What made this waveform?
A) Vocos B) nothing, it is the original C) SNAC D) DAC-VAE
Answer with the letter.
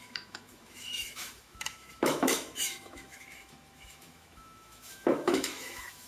D